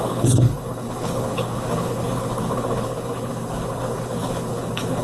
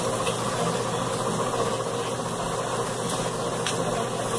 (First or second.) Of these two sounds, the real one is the second